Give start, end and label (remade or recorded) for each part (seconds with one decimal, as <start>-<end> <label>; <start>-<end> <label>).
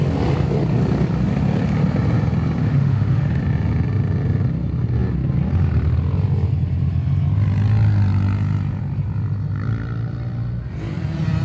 0.0-2.6 recorded; 2.6-3.4 remade; 3.4-11.4 recorded